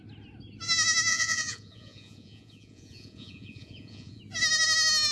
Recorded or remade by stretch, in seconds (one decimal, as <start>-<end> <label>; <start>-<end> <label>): 0.0-1.1 recorded; 1.1-4.2 remade; 4.2-5.1 recorded